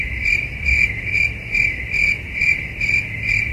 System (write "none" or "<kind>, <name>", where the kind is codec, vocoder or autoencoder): none